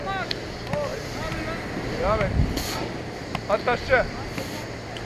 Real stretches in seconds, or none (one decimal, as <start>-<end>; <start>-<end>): 0.0-5.0